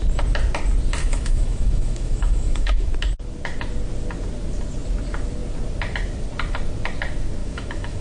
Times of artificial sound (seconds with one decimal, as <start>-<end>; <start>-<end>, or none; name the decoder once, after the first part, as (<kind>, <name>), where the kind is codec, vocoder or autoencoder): 1.0-2.9 (autoencoder, DAC-VAE); 7.4-8.0